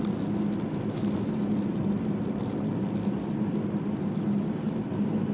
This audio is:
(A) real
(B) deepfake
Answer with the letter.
A